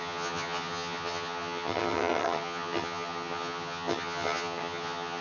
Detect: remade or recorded remade